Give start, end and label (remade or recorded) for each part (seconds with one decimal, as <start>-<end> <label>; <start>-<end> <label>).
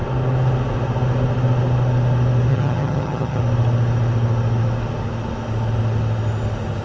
0.0-2.5 recorded; 2.5-3.4 remade; 3.4-6.8 recorded